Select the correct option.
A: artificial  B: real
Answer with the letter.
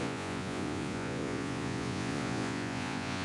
A